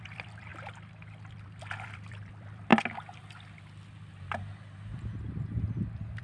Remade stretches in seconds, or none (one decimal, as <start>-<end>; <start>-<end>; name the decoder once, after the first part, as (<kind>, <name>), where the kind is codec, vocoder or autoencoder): 0.0-0.5 (vocoder, BigVGAN v2); 1.3-2.7